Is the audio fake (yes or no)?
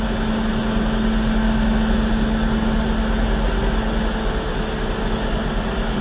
no